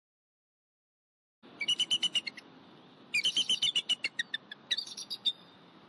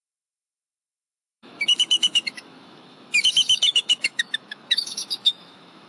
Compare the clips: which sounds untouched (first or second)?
first